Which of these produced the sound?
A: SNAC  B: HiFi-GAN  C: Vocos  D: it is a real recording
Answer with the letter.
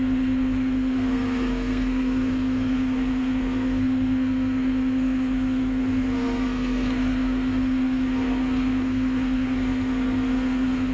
A